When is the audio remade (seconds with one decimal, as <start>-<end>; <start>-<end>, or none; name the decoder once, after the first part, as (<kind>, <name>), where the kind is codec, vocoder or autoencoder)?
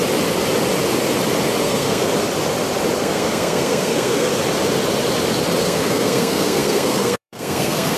1.6-2.1 (codec, SNAC); 3.0-4.3; 5.6-8.0